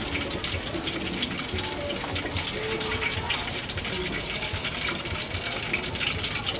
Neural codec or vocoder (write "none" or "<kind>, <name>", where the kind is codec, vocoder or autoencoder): none